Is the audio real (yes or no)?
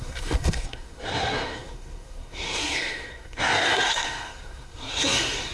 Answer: no